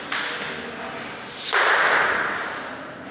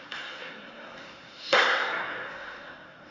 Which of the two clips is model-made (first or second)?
second